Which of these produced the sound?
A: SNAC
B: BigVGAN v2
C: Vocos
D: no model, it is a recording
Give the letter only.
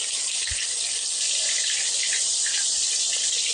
B